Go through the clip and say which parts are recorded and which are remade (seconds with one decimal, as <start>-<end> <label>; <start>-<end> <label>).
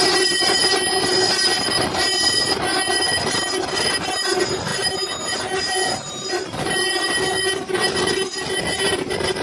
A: 0.0-0.9 remade; 0.9-4.7 recorded; 4.7-7.1 remade; 7.1-9.4 recorded